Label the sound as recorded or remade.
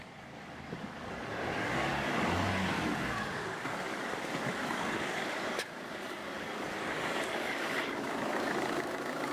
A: remade